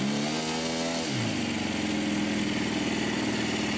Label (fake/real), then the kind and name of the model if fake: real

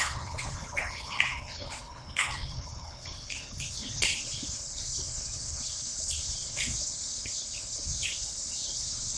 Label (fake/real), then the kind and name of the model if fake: fake, codec, HILCodec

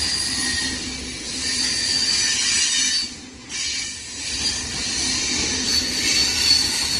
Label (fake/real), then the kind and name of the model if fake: real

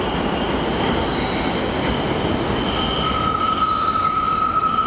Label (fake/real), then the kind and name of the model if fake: real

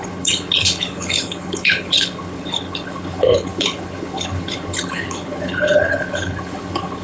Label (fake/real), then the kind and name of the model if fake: fake, codec, HILCodec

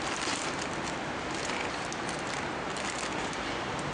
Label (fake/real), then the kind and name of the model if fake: real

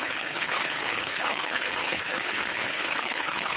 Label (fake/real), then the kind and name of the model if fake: fake, codec, HILCodec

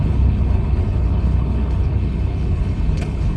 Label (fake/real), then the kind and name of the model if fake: fake, codec, HILCodec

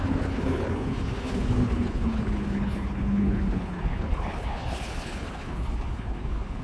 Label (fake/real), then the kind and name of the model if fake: fake, codec, HILCodec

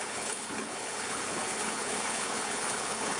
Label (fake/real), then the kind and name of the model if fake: fake, codec, HILCodec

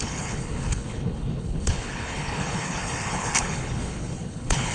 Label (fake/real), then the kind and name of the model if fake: fake, codec, HILCodec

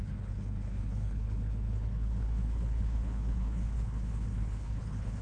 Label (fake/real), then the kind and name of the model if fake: fake, codec, HILCodec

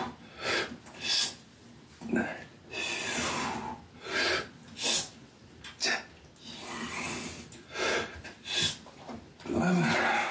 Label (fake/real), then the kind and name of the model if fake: real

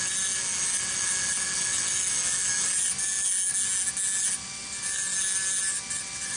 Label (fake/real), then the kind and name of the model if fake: real